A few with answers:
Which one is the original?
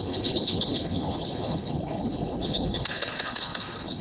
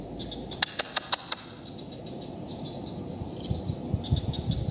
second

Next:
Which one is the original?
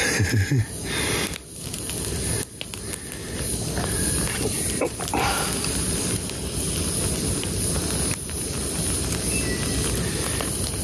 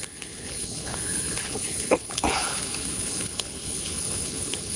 first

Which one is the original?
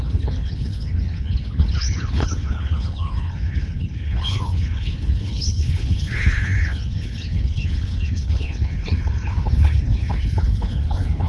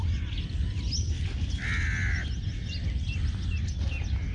second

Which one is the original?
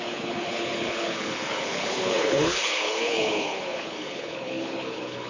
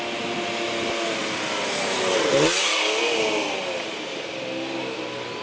second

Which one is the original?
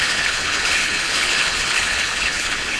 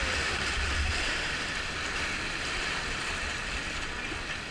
second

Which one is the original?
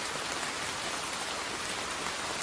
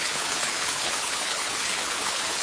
first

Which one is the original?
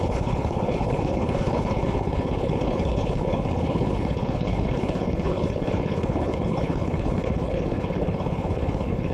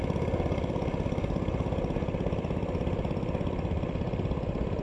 second